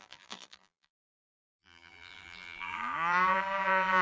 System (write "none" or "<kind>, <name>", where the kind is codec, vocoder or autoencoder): vocoder, BigVGAN v2